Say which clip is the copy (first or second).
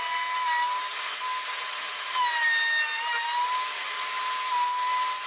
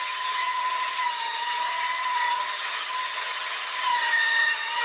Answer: second